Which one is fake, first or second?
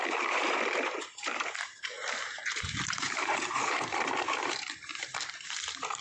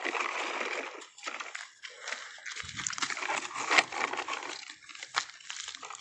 first